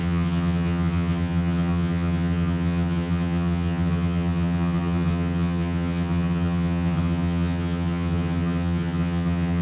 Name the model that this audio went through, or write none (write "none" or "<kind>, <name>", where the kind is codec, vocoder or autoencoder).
vocoder, HiFi-GAN